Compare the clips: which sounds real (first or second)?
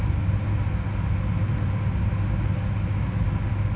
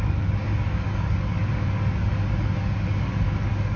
first